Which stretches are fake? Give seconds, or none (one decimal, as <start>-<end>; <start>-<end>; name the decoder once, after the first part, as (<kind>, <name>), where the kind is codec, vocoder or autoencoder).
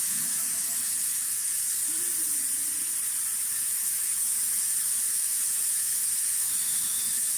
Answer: 0.0-1.6 (autoencoder, DAC-VAE); 3.5-7.4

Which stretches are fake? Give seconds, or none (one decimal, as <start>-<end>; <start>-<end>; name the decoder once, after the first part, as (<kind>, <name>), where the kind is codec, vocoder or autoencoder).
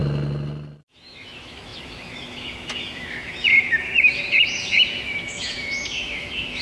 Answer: 0.8-6.6 (autoencoder, DAC-VAE)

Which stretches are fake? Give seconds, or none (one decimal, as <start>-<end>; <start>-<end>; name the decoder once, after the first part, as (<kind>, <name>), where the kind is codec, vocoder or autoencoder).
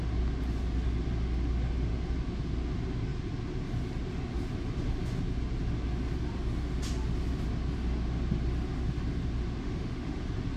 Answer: 9.6-10.2 (autoencoder, DAC-VAE)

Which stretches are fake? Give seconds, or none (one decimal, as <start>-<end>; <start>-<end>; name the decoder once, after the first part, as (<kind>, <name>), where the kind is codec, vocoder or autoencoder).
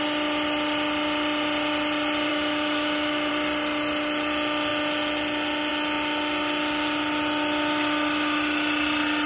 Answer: 2.3-3.3 (autoencoder, DAC-VAE)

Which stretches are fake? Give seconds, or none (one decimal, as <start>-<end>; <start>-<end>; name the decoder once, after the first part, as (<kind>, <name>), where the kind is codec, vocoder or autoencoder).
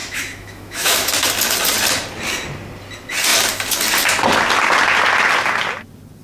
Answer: 0.0-1.1 (autoencoder, DAC-VAE)